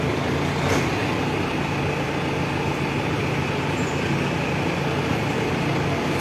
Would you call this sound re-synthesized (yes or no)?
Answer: no